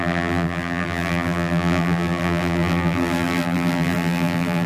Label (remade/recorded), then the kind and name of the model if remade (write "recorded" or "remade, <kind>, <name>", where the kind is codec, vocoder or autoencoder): remade, vocoder, BigVGAN v2